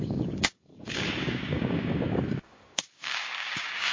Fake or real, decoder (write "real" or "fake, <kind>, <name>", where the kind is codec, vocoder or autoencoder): fake, codec, DAC